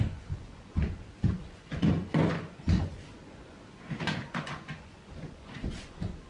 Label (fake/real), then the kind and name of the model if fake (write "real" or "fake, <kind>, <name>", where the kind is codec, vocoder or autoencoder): fake, vocoder, Vocos